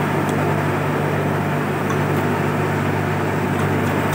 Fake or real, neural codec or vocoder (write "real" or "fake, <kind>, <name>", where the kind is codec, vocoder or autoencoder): real